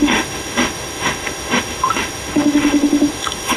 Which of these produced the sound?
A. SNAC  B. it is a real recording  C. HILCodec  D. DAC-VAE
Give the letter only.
D